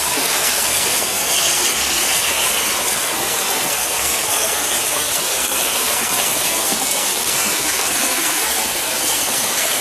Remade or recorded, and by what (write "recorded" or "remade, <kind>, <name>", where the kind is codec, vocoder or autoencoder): remade, codec, SNAC